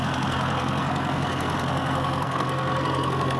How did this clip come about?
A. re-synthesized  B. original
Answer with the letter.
A